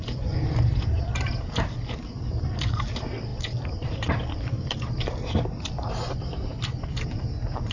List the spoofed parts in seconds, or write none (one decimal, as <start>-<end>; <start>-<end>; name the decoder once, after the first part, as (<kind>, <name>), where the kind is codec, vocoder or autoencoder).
0.0-7.7 (vocoder, BigVGAN v2)